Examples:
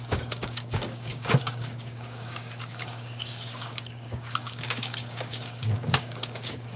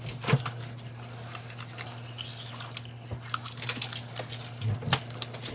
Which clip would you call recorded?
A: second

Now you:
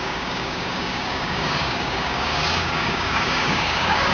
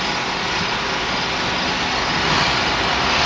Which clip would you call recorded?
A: second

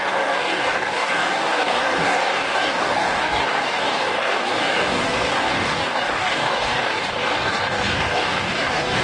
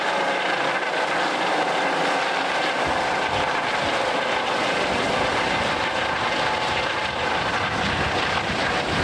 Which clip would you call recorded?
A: second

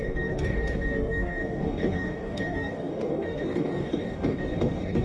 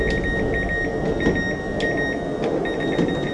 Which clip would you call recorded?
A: second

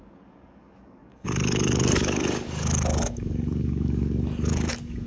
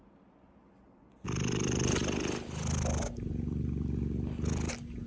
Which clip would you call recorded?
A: second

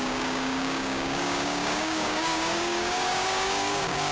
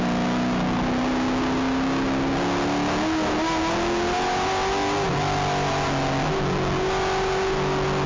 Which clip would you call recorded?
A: second